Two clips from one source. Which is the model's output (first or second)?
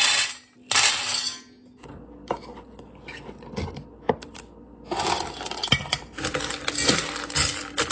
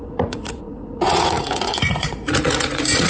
second